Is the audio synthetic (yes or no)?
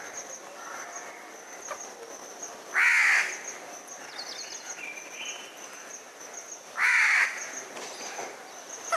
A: no